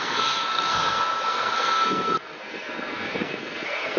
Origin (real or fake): fake